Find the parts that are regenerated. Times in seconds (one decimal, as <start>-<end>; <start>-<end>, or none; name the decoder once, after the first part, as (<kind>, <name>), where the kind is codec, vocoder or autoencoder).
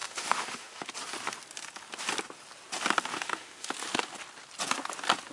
0.0-0.9 (autoencoder, DAC-VAE); 3.1-3.7